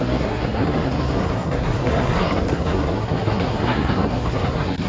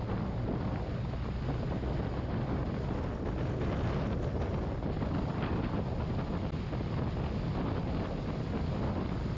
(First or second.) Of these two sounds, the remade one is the first